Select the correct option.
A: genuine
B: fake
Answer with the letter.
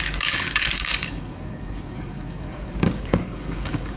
B